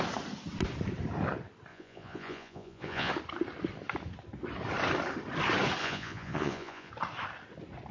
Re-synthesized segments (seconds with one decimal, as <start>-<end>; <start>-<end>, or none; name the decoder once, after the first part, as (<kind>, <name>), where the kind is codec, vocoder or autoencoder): 1.7-3.1 (vocoder, Vocos); 5.8-6.9